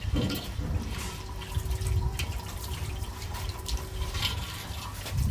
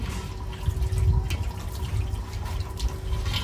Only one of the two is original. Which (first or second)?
second